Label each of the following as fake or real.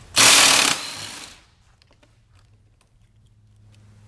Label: real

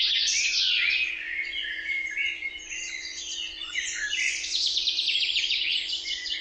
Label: fake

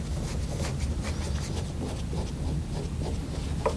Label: real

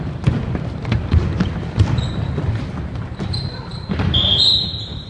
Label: fake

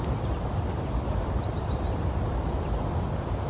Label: real